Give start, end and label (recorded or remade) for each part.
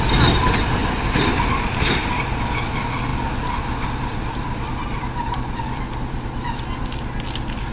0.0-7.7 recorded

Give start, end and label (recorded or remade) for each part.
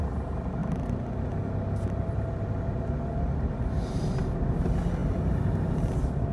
0.0-6.3 recorded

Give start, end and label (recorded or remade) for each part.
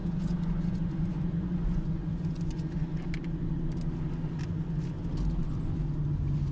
0.0-3.0 remade; 3.0-6.5 recorded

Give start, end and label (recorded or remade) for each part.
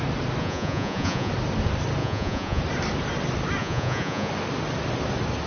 0.0-0.4 recorded; 0.4-1.3 remade; 1.3-2.0 recorded; 2.0-2.6 remade; 2.6-3.6 recorded; 3.6-4.3 remade; 4.3-5.5 recorded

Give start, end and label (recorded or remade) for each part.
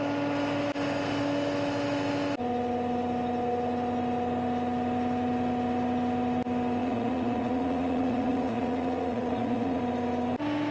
0.0-6.8 recorded; 6.8-9.8 remade; 9.8-10.7 recorded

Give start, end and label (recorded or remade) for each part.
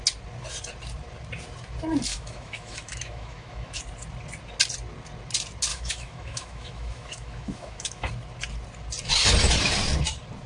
0.0-2.1 recorded; 2.1-3.8 remade; 3.8-5.7 recorded; 5.7-8.1 remade; 8.1-10.5 recorded